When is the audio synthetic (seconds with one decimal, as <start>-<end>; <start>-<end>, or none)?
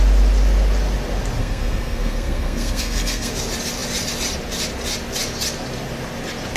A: 1.4-3.3